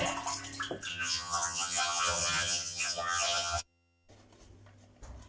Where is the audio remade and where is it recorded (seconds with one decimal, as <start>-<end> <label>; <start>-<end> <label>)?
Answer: 0.0-0.9 recorded; 0.9-4.1 remade; 4.1-5.3 recorded